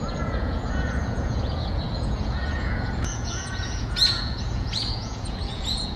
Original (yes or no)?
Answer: no